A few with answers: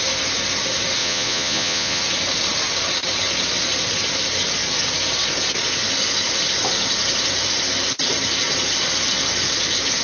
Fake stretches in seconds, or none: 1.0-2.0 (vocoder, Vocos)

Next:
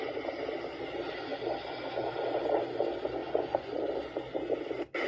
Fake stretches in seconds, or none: 3.2-3.8 (vocoder, Vocos)

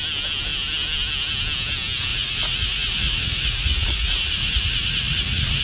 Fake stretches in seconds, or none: 2.1-5.6 (vocoder, Vocos)

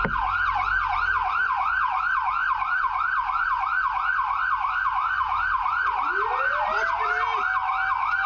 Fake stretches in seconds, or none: none

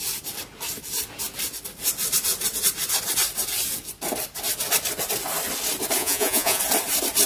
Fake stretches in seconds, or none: 6.0-6.6 (vocoder, Vocos)

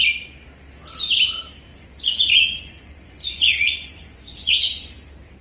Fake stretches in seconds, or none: 1.7-4.9 (vocoder, Vocos)

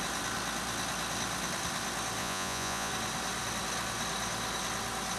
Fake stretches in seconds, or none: 2.2-2.9 (vocoder, Vocos)

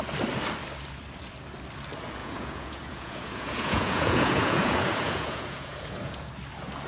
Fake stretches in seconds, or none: 2.2-6.3 (vocoder, Vocos)